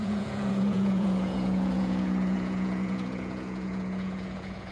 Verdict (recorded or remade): remade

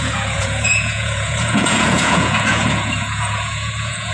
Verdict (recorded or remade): remade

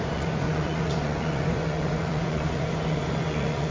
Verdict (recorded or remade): remade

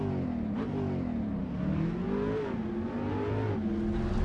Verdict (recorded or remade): recorded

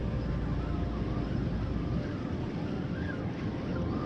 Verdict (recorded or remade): recorded